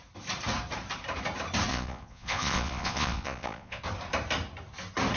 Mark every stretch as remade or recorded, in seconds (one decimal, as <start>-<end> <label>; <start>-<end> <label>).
0.0-1.7 recorded; 1.7-3.8 remade; 3.8-5.2 recorded